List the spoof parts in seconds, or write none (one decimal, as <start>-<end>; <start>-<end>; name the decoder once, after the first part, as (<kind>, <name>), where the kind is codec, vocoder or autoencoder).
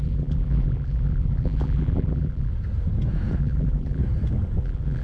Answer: 0.0-2.5 (vocoder, BigVGAN v2); 3.4-4.0; 4.6-5.0